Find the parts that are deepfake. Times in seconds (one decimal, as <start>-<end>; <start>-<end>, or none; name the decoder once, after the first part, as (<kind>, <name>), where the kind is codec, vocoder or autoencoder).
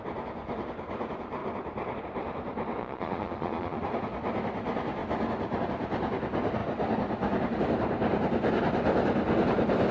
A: 2.8-3.8 (vocoder, Vocos)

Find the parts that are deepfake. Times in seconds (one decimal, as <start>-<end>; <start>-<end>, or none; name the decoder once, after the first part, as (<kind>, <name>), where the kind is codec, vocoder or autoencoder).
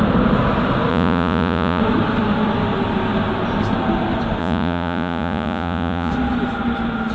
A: 0.9-1.8 (vocoder, Vocos); 4.4-6.1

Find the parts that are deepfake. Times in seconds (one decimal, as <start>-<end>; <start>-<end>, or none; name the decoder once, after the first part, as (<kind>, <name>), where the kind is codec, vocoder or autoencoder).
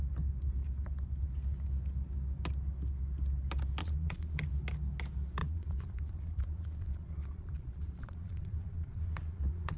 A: 3.8-4.5 (vocoder, Vocos); 5.4-9.8